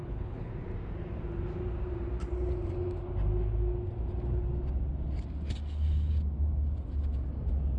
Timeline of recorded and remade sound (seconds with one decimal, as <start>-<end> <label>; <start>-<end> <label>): 0.0-0.5 remade; 0.5-7.8 recorded